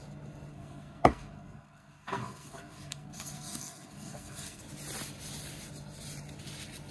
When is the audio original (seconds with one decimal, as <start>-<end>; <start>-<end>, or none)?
0.0-0.5; 4.6-6.9

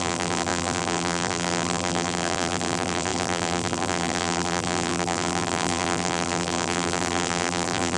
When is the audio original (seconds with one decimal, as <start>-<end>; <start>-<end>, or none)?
none

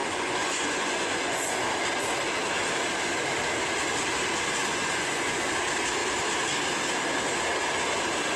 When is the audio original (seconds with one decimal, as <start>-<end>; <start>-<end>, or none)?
1.6-4.6; 5.5-8.4